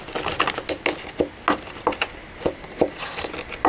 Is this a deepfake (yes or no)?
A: no